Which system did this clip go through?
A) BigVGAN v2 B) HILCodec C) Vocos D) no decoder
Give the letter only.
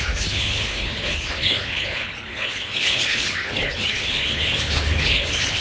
B